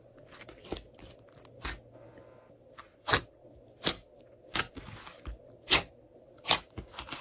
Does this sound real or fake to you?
real